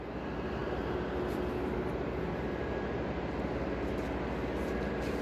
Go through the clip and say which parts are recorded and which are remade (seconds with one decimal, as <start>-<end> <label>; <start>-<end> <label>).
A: 0.0-5.2 recorded